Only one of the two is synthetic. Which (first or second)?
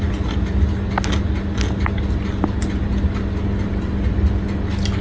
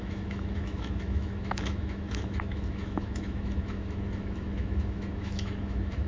second